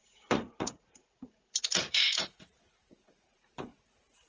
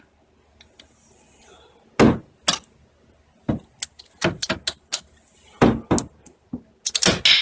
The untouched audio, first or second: second